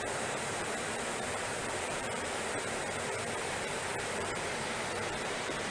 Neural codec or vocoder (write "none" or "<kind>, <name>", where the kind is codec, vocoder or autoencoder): vocoder, BigVGAN v2